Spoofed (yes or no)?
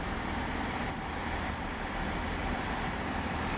yes